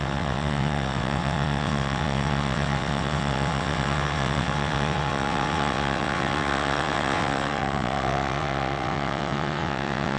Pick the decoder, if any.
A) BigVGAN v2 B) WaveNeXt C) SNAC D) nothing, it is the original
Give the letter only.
B